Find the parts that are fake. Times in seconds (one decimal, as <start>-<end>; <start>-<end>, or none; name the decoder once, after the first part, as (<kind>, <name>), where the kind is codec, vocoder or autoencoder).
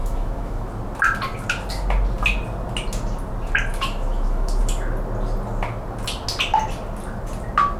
0.0-0.7 (autoencoder, DAC-VAE); 3.7-4.6